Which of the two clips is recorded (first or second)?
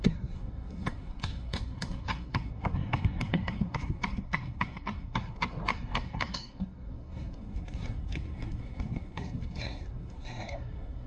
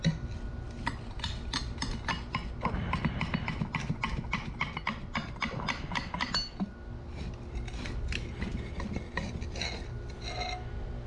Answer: second